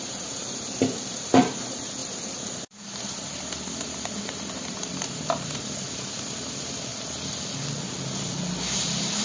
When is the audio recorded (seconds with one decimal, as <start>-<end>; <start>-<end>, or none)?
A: 6.9-8.7